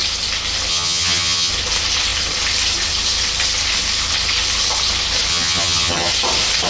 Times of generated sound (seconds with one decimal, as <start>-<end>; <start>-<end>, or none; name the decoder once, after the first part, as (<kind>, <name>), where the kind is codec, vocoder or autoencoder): 0.7-1.5 (vocoder, HiFi-GAN); 5.3-6.1